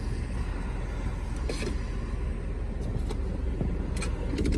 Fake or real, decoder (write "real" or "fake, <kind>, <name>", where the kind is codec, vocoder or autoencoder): real